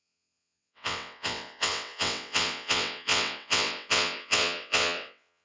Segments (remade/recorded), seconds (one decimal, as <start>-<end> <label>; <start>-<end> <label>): 0.0-5.4 remade